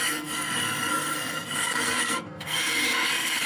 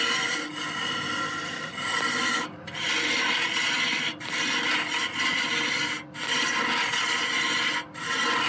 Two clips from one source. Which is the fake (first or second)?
first